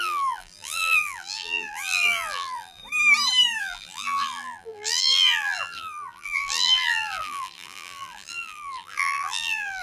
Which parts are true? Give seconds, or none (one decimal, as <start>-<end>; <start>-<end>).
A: 2.8-3.6